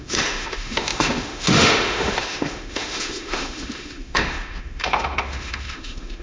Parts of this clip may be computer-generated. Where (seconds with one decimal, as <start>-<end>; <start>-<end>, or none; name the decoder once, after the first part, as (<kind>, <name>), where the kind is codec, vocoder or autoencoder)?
0.0-6.2 (autoencoder, DAC-VAE)